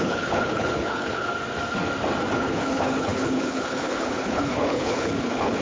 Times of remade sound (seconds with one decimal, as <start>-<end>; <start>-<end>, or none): 0.0-1.3; 2.3-5.6